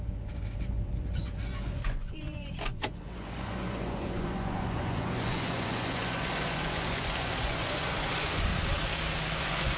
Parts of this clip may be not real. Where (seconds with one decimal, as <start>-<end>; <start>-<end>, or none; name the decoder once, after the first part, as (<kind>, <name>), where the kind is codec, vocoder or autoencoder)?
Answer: 0.0-8.5 (vocoder, Vocos); 9.4-9.8